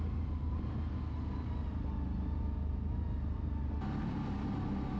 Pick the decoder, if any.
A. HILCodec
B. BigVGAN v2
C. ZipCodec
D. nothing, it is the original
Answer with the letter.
D